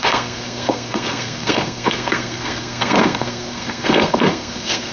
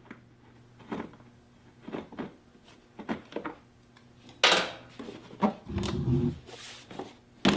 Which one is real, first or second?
second